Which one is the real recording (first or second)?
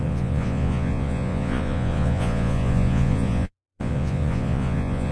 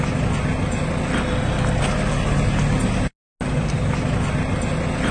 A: second